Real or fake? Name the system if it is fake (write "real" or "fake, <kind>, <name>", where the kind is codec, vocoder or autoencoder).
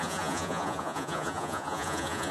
fake, vocoder, Vocos